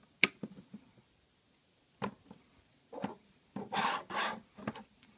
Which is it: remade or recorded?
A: recorded